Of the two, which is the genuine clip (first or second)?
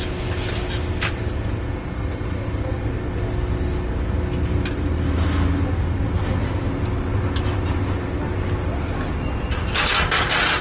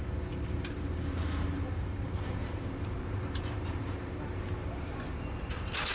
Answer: first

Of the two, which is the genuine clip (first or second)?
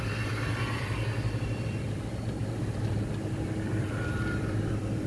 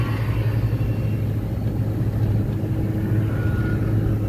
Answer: second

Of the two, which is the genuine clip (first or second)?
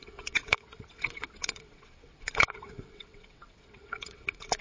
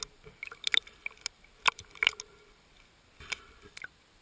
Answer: second